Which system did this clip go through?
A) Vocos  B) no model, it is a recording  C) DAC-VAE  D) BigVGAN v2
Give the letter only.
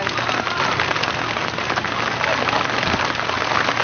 B